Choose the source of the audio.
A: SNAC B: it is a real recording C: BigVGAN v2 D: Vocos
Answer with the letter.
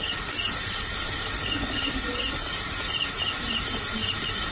B